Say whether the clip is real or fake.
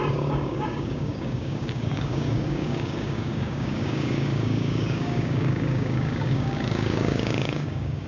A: fake